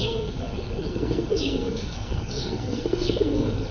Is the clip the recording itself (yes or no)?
no